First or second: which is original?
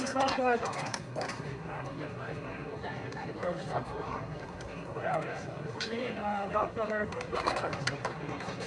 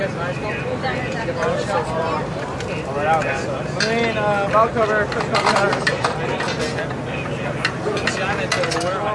second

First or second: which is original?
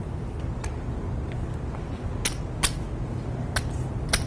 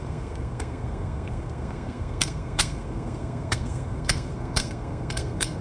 first